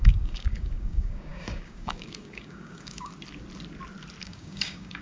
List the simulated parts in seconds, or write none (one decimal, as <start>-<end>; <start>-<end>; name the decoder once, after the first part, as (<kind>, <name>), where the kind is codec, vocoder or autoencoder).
0.0-3.1 (codec, DAC); 4.2-5.0